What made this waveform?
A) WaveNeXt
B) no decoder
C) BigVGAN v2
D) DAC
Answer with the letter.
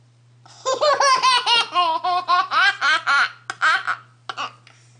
B